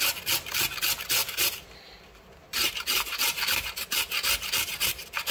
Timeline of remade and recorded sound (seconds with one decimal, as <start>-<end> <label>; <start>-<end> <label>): 0.0-1.2 recorded; 1.2-3.4 remade; 3.4-5.3 recorded